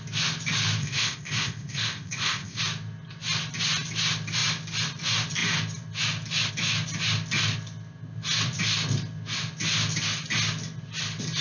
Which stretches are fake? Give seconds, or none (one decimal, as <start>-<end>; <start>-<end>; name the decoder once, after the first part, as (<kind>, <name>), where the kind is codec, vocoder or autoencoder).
0.8-2.6 (codec, ZipCodec)